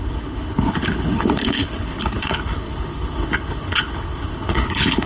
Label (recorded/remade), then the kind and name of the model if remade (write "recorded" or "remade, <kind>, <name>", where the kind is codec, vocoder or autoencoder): remade, codec, HILCodec